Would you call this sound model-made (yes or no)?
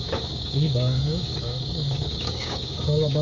yes